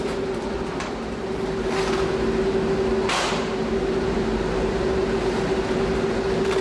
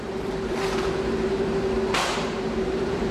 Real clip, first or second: first